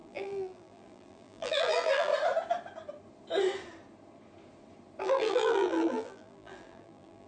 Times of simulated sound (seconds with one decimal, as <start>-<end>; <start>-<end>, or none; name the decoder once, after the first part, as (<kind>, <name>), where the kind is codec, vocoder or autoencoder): 0.0-2.1 (vocoder, BigVGAN v2); 5.0-7.3